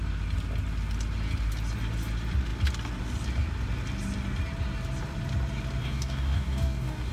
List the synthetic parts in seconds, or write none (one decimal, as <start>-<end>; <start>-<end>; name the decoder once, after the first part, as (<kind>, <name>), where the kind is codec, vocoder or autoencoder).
5.8-7.1 (codec, DAC)